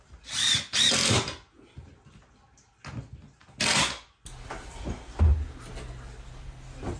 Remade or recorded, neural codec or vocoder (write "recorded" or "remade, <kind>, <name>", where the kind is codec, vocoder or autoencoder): recorded